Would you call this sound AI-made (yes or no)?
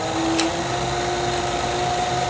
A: no